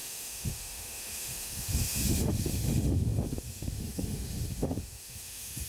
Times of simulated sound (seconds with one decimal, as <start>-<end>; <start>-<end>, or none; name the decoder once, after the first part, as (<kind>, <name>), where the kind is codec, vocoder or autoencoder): 0.0-5.7 (autoencoder, DAC-VAE)